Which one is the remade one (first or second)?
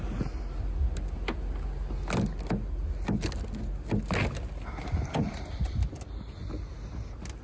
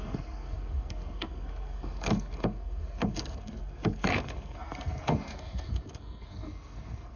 second